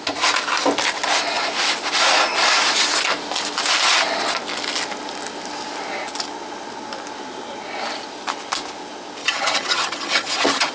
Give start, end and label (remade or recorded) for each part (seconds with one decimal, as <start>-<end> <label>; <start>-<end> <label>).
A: 0.0-9.2 recorded; 9.2-10.7 remade